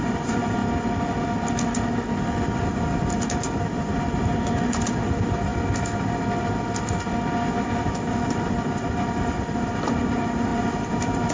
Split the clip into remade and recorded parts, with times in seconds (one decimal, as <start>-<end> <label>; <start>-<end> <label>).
0.0-0.6 remade; 0.6-2.3 recorded; 2.3-5.5 remade; 5.5-7.8 recorded; 7.8-11.3 remade